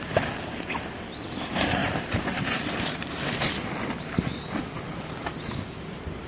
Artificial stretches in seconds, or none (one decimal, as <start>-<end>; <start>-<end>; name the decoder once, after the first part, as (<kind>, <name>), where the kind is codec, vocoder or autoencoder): 1.8-3.5 (vocoder, BigVGAN v2)